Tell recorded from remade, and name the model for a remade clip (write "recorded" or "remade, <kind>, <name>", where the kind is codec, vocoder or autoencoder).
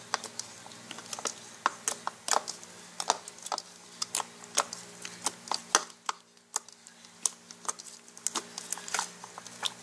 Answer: recorded